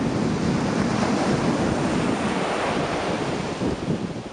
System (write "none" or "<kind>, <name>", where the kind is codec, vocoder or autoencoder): none